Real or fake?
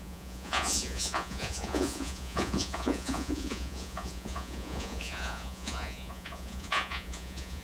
fake